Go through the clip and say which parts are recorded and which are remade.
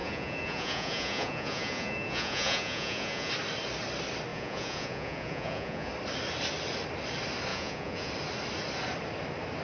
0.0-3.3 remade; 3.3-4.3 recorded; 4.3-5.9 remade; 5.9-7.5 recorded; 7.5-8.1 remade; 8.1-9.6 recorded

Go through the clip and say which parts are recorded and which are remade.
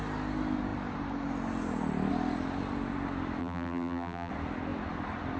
0.0-3.4 recorded; 3.4-4.3 remade; 4.3-5.4 recorded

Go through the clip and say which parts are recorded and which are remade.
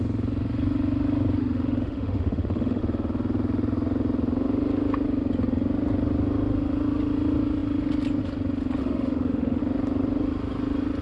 0.0-1.4 recorded; 1.4-2.8 remade; 2.8-8.8 recorded; 8.8-9.6 remade; 9.6-11.0 recorded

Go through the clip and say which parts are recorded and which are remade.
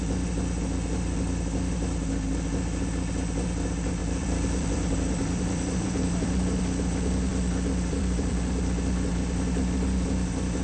0.0-4.0 recorded; 4.0-6.6 remade; 6.6-7.3 recorded; 7.3-9.1 remade; 9.1-10.6 recorded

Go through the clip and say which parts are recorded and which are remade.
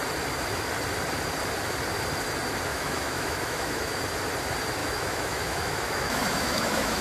0.0-2.7 recorded; 2.7-4.0 remade; 4.0-4.8 recorded; 4.8-7.0 remade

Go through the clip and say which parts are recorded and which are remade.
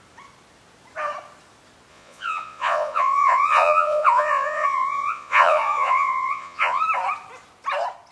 0.0-1.9 recorded; 1.9-6.8 remade; 6.8-8.1 recorded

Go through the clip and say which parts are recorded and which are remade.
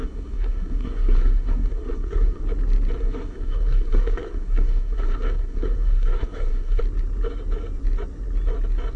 0.0-2.4 remade; 2.4-3.0 recorded; 3.0-6.8 remade; 6.8-9.0 recorded